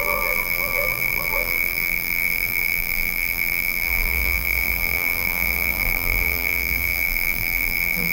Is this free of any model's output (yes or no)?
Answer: no